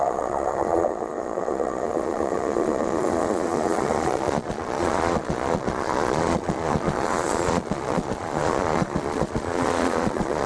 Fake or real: fake